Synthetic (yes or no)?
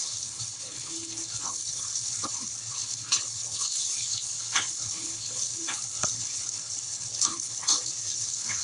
yes